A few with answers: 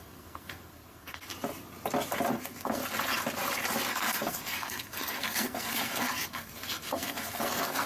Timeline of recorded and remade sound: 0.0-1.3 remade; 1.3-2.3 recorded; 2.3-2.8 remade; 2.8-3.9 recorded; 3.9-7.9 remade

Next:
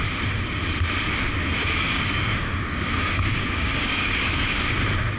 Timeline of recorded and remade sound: 0.0-1.6 recorded; 1.6-4.7 remade; 4.7-5.2 recorded